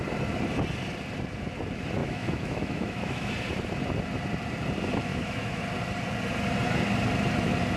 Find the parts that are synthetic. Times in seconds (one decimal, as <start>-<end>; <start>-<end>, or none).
2.0-3.3; 5.1-5.6